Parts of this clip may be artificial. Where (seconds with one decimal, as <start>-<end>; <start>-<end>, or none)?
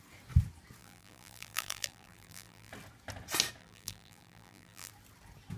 0.8-2.7; 3.6-4.9